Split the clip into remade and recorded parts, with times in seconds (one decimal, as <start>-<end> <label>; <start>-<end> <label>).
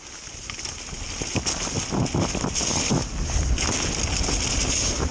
0.0-5.1 recorded